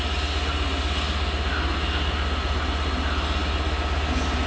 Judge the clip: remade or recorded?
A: recorded